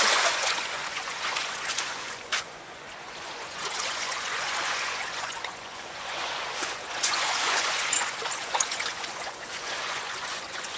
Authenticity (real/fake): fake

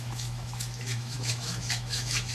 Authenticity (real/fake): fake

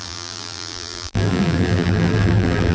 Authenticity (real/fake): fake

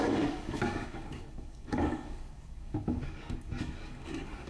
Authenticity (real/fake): fake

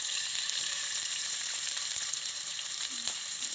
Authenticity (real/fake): fake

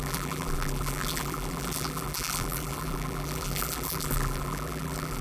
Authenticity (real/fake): fake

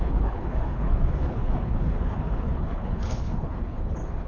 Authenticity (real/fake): fake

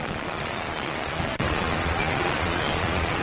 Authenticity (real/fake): fake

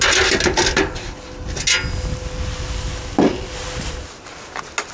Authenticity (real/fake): real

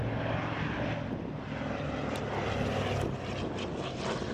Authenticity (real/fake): real